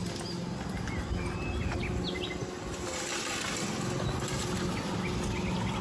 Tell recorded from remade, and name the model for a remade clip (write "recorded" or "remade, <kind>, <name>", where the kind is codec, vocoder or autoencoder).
recorded